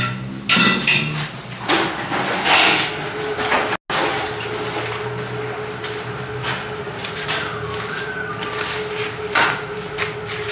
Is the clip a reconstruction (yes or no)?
no